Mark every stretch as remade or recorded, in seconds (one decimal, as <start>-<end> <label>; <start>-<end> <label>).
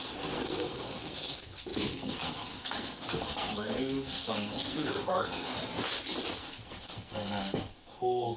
0.0-5.5 remade; 5.5-6.3 recorded; 6.3-8.4 remade